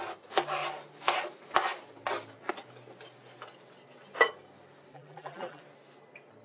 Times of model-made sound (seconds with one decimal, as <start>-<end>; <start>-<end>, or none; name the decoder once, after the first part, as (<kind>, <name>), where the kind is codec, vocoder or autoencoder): 4.9-5.6 (vocoder, BigVGAN v2)